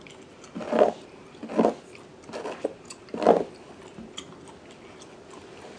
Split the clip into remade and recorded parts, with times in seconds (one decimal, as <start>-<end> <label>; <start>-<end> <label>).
0.0-5.8 recorded